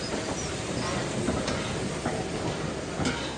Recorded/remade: recorded